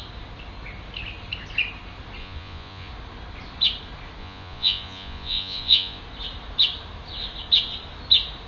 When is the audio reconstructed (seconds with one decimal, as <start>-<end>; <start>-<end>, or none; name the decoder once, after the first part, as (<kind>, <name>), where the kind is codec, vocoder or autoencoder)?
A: 2.2-2.9 (vocoder, Vocos); 4.2-6.0